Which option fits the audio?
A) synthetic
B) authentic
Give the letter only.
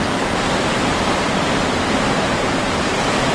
A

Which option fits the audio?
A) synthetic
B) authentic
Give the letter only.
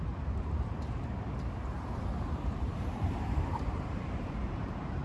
A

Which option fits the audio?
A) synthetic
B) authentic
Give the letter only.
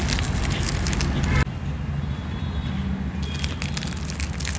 B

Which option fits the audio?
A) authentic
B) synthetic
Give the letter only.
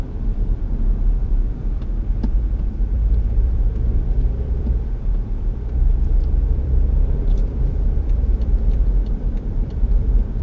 B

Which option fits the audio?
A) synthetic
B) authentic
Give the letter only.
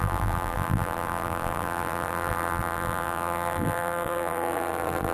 A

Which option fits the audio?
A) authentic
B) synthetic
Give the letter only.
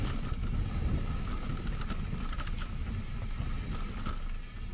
A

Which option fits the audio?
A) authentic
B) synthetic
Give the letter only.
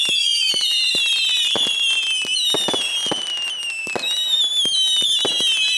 A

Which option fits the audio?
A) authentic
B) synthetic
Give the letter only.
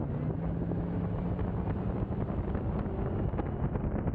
A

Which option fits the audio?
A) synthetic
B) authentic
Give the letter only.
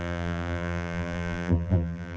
A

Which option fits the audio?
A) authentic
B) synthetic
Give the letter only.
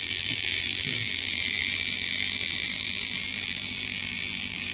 B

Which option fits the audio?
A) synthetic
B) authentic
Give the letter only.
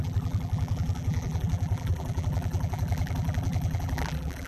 A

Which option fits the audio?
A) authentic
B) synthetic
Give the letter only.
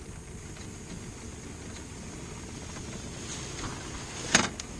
A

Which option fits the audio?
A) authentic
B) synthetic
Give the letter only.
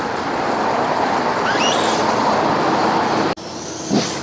A